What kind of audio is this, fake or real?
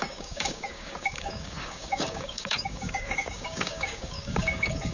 fake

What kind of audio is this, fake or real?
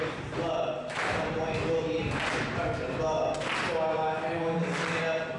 real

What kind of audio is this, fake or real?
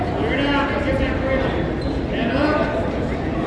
real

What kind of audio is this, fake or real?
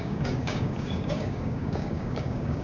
fake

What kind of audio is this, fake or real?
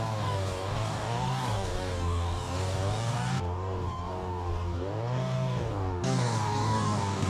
fake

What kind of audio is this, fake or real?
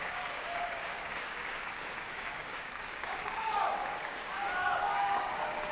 fake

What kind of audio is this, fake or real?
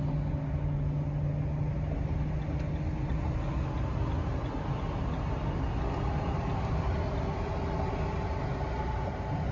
real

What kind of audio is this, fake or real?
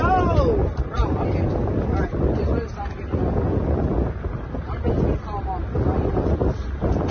real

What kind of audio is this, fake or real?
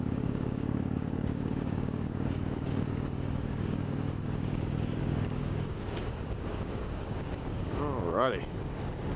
fake